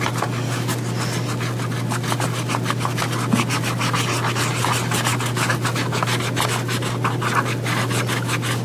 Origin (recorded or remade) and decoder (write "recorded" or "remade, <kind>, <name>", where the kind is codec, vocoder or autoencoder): recorded